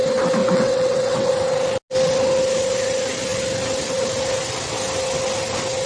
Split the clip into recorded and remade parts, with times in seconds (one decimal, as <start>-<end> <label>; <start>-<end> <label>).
0.0-0.4 recorded; 0.4-1.3 remade; 1.3-5.9 recorded